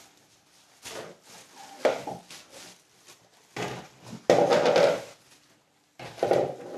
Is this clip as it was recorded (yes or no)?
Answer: yes